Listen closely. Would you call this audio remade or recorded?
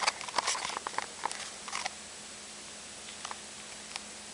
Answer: recorded